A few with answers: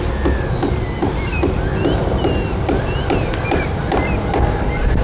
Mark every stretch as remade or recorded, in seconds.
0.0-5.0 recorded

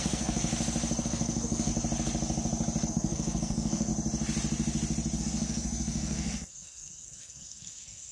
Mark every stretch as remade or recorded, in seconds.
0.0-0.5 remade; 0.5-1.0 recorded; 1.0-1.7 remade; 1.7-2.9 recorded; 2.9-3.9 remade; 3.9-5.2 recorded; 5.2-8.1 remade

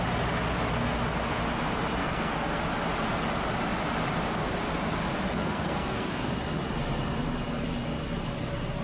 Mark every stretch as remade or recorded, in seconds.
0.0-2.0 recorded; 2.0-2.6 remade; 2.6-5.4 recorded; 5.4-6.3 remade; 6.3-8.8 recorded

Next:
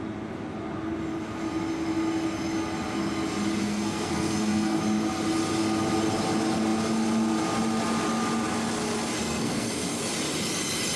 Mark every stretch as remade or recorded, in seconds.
0.0-3.6 recorded; 3.6-4.8 remade; 4.8-9.2 recorded; 9.2-10.0 remade; 10.0-11.0 recorded

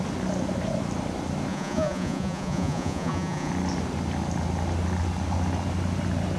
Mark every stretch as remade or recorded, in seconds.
0.0-1.5 recorded; 1.5-3.5 remade; 3.5-6.4 recorded

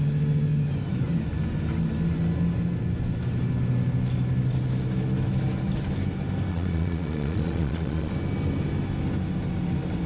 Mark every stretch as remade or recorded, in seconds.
0.0-6.5 recorded; 6.5-8.1 remade; 8.1-10.1 recorded